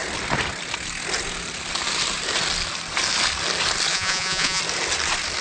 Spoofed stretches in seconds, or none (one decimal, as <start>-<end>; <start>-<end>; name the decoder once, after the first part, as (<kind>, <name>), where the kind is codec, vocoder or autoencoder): 3.9-4.6 (vocoder, Vocos)